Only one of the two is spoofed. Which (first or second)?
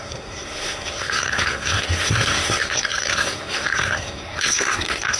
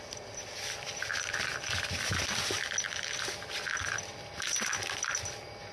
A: first